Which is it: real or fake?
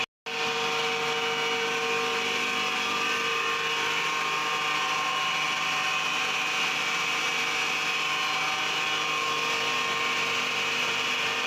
real